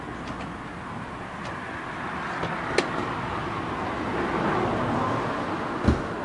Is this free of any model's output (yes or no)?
yes